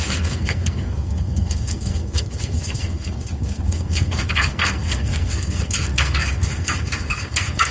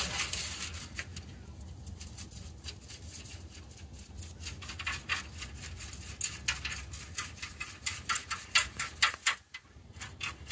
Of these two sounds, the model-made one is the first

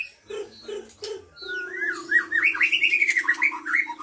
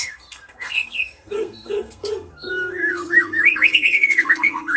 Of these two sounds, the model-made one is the second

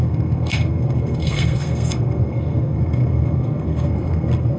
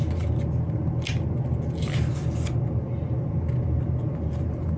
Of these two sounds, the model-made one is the first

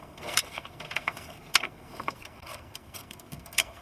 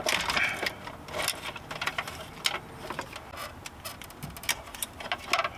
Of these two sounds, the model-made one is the first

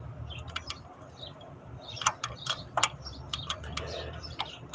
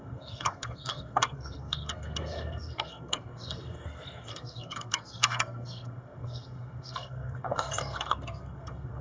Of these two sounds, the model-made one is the second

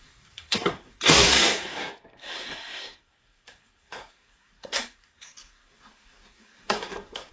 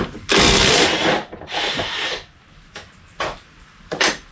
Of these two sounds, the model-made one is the first